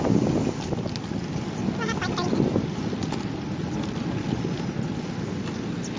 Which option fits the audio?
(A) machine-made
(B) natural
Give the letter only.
B